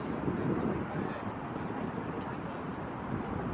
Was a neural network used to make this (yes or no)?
no